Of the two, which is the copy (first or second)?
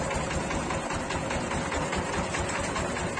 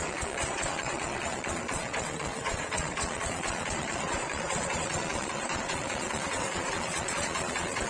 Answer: second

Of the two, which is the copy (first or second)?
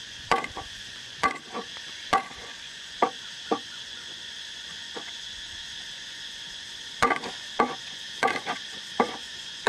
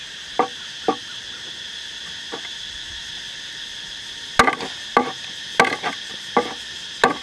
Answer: first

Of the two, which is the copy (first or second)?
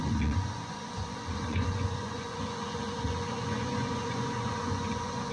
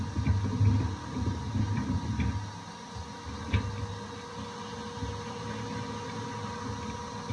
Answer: first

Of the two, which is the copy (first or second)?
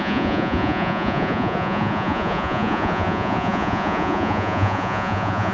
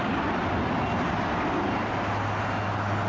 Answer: first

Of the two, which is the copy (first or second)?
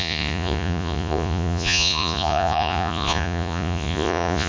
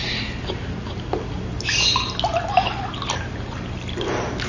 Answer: first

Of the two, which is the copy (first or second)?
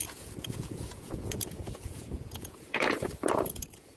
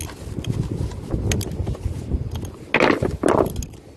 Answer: first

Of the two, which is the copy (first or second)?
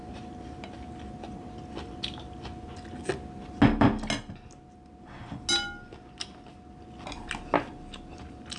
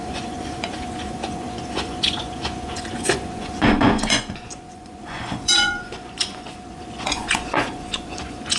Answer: second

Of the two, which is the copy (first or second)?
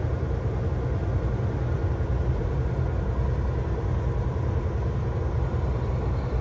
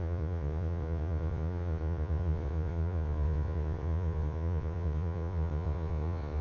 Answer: second